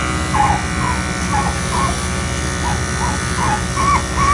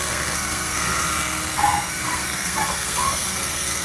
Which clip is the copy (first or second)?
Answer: second